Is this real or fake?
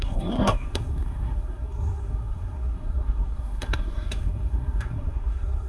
fake